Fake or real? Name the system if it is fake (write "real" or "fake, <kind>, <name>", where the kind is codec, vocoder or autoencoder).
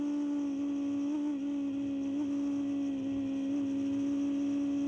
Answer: real